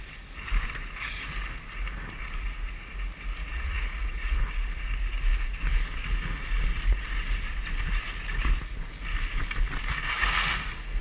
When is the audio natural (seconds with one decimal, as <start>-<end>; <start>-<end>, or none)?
0.0-3.4; 4.4-11.0